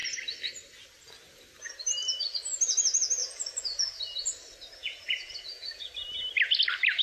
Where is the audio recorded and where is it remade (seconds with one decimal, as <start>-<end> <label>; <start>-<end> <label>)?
0.0-3.2 recorded; 3.2-4.0 remade; 4.0-4.8 recorded; 4.8-5.9 remade; 5.9-7.0 recorded